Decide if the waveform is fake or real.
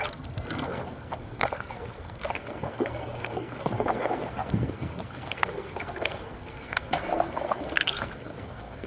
fake